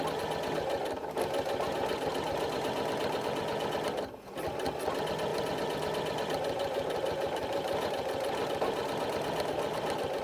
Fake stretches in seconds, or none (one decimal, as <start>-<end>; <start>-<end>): 5.3-10.2